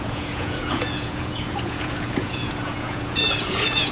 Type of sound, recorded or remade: remade